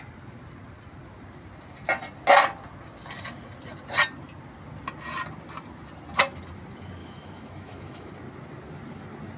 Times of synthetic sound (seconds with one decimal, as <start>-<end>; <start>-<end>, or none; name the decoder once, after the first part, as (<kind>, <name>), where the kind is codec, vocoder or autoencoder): 7.0-8.1 (autoencoder, DAC-VAE)